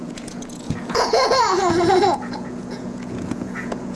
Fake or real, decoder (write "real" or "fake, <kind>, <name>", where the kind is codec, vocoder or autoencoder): fake, vocoder, Vocos